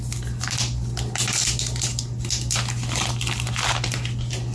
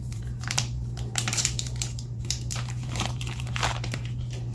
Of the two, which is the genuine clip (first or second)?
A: first